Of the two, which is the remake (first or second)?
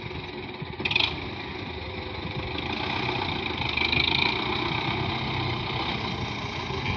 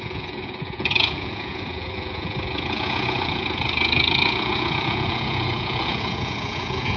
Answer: second